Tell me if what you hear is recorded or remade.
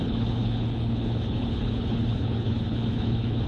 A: remade